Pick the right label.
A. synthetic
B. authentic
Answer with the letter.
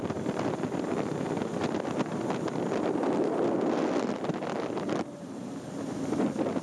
A